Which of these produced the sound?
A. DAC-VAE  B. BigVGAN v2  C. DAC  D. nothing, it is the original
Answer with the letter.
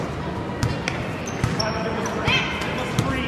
D